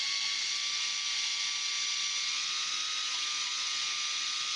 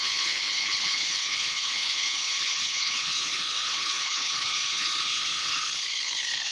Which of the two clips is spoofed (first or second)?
second